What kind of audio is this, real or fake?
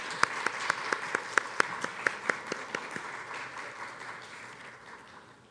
real